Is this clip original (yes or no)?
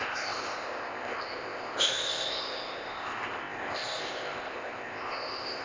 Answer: no